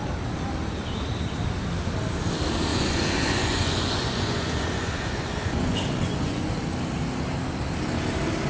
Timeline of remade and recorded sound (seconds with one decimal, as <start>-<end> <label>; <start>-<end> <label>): 0.0-2.7 recorded; 2.7-6.5 remade; 6.5-8.5 recorded